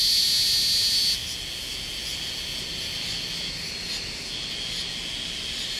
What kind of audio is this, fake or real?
real